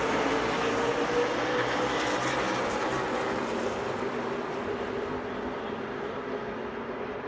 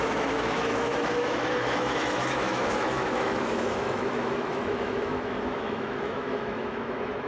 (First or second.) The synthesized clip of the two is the second